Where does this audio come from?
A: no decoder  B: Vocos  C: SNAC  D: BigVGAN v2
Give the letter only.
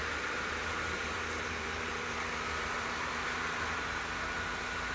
D